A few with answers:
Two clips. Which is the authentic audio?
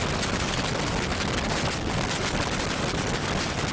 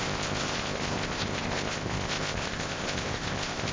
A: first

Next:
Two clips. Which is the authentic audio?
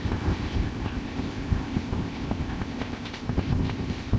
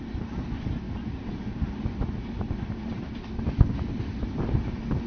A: second